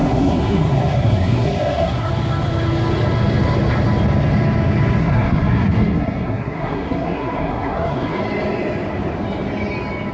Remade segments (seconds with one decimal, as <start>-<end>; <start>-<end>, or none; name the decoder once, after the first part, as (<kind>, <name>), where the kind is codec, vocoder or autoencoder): 0.0-2.1 (codec, SNAC); 5.0-8.2